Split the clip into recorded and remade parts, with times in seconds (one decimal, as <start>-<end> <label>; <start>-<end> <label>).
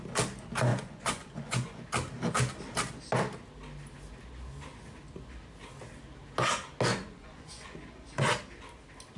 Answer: 0.0-0.7 recorded; 0.7-1.8 remade; 1.8-6.9 recorded; 6.9-8.3 remade; 8.3-9.2 recorded